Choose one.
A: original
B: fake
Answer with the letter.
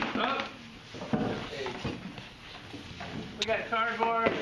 A